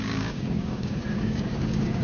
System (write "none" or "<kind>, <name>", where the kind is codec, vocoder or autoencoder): codec, DAC